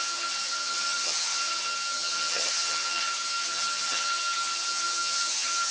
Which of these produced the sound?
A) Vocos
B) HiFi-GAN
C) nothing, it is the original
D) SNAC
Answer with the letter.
B